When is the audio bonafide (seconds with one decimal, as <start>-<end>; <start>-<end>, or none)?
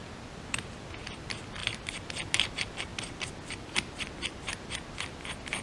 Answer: 0.0-2.9; 4.4-5.6